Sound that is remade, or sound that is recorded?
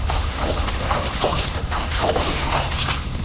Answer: remade